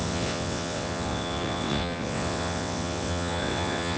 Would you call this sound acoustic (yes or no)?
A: no